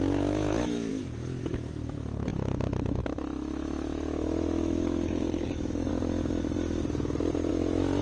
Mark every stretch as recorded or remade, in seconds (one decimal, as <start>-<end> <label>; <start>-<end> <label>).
0.0-5.9 remade; 5.9-7.5 recorded; 7.5-8.0 remade